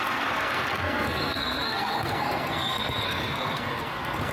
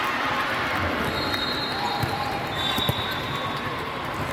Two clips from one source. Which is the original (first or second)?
second